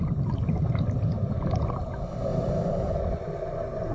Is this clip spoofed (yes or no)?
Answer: no